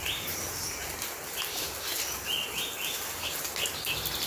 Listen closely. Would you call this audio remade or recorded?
recorded